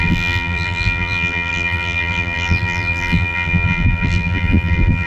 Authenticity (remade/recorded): remade